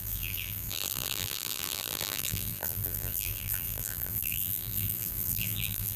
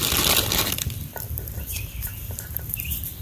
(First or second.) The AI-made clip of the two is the first